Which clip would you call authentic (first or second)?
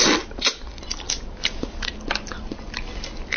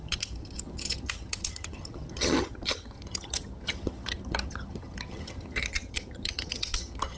first